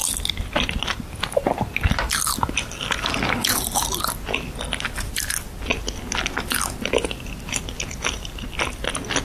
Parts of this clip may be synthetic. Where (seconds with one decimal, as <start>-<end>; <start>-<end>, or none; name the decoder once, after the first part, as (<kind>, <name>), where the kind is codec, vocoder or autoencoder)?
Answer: none